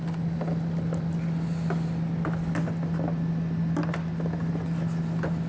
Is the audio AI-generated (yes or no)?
no